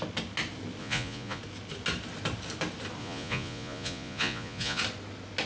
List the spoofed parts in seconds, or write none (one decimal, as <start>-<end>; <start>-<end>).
0.8-1.4; 3.0-4.8